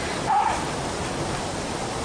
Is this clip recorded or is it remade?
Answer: recorded